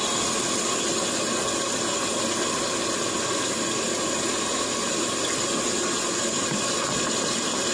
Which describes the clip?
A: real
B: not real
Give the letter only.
A